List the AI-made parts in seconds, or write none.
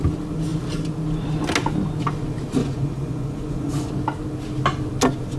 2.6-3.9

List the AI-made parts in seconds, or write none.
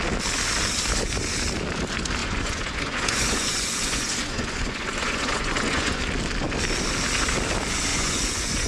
2.2-6.0; 7.9-8.7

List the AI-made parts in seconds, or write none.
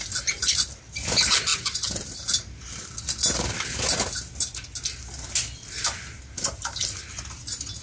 none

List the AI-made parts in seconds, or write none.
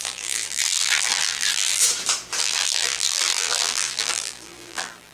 0.0-1.8; 2.4-5.1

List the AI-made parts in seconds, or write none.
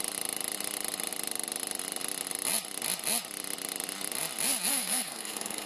4.7-5.7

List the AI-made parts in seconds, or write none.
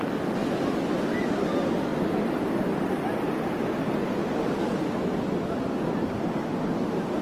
none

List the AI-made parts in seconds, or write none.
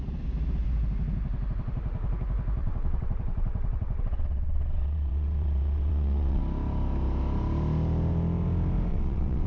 2.6-6.4; 8.9-9.5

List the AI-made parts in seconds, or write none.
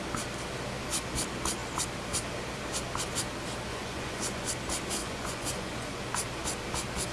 3.7-4.5; 5.0-6.0